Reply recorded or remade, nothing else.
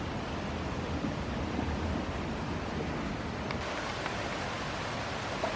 recorded